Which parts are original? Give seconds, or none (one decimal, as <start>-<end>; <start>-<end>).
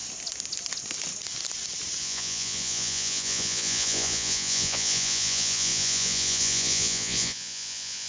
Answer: 0.0-2.0